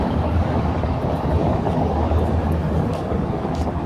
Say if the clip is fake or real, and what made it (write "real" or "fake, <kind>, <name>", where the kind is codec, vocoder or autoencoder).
fake, codec, DAC